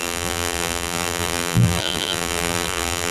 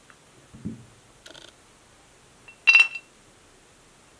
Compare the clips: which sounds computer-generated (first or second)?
first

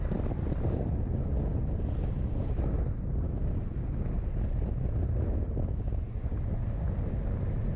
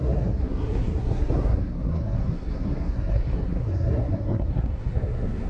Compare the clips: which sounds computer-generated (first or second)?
second